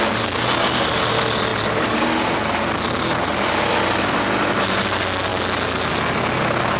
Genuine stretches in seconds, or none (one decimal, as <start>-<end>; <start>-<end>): 0.0-1.5; 2.3-3.1; 4.4-6.8